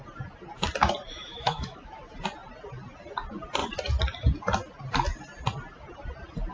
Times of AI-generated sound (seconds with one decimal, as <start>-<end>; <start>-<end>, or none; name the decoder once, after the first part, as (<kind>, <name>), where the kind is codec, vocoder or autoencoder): 1.1-2.0 (autoencoder, DAC-VAE)